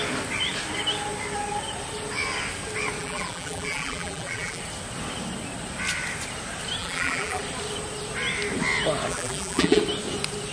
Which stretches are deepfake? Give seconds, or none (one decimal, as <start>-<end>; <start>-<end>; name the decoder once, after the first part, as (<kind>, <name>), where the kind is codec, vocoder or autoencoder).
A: 3.0-4.6 (vocoder, BigVGAN v2); 6.8-7.4; 9.1-9.8